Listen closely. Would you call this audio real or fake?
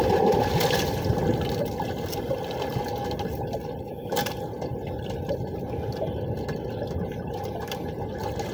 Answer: real